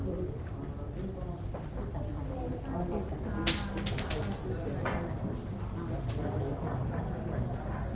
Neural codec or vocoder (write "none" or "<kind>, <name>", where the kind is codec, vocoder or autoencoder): none